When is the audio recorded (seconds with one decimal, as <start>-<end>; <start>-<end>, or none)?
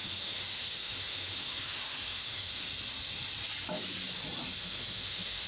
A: 2.7-4.5